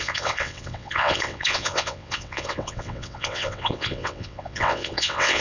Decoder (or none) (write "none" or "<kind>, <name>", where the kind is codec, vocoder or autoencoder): vocoder, WaveNeXt